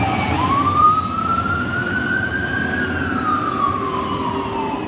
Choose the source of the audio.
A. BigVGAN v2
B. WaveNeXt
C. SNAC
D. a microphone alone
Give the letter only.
A